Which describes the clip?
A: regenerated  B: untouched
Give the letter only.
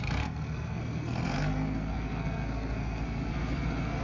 A